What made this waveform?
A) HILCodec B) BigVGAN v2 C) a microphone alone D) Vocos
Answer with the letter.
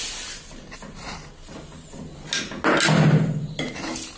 C